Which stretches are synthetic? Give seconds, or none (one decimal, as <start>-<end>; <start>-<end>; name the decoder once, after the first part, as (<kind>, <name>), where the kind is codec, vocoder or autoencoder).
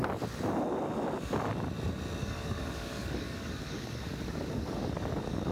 2.2-5.5 (codec, DAC)